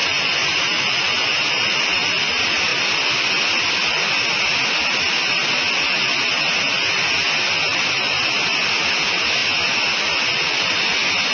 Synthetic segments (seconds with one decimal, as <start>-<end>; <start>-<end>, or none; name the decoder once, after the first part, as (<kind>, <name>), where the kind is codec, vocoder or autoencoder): 0.0-1.4 (vocoder, Vocos)